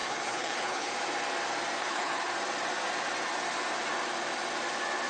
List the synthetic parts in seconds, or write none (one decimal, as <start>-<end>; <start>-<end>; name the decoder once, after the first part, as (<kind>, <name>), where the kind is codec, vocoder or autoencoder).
0.0-0.9 (codec, HILCodec); 1.8-2.3